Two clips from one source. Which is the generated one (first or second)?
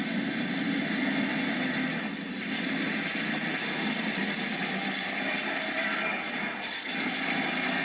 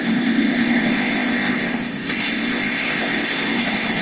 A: second